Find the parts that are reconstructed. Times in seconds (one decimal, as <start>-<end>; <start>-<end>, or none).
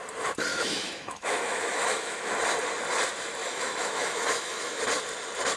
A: 0.5-2.3; 3.4-4.8